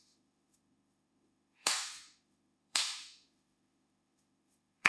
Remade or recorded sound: remade